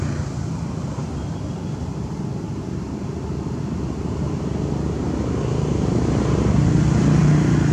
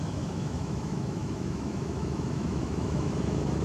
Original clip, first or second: first